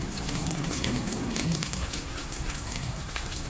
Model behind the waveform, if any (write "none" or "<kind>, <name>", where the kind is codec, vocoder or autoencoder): codec, SNAC